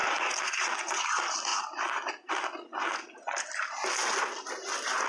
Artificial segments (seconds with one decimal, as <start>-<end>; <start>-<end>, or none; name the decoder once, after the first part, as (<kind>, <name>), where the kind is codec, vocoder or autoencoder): none